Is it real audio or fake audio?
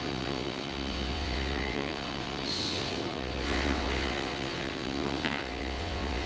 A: fake